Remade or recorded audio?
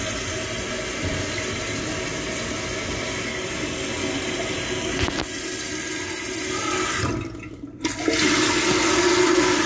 recorded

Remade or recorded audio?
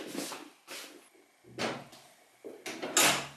recorded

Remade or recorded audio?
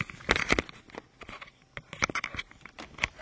recorded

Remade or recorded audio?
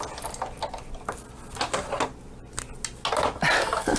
recorded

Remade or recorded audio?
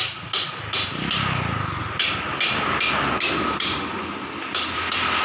recorded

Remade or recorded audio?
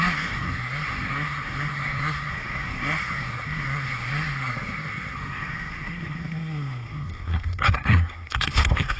remade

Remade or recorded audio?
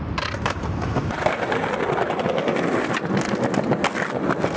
recorded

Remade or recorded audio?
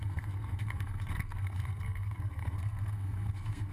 remade